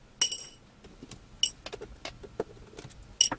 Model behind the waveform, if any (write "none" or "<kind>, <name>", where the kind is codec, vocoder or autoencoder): none